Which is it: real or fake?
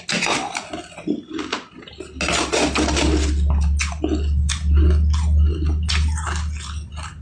real